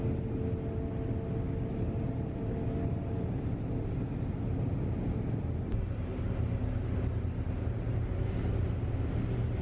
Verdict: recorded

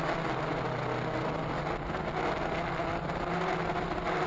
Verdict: recorded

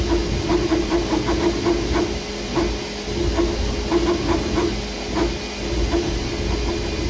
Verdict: recorded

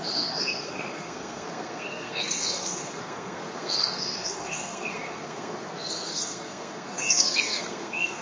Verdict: remade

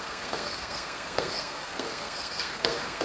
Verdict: remade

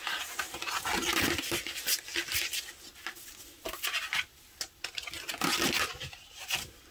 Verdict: recorded